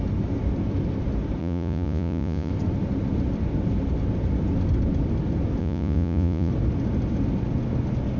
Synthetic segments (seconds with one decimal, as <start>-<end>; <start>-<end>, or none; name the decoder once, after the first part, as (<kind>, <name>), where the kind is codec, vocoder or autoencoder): 1.4-2.5 (vocoder, Vocos); 5.6-6.5